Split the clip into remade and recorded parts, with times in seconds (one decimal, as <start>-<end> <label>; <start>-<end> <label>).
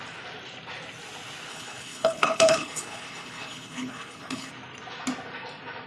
0.0-1.5 recorded; 1.5-4.5 remade; 4.5-5.9 recorded